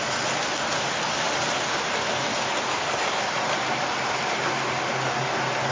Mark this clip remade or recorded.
recorded